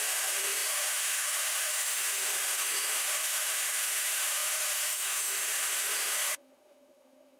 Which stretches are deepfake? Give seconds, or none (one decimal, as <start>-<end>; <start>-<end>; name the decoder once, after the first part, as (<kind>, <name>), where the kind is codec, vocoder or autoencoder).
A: 0.0-7.4 (autoencoder, DAC-VAE)